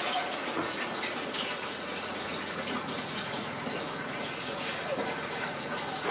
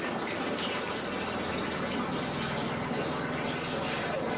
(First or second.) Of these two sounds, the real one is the second